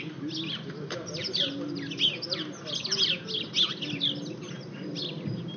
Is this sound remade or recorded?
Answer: recorded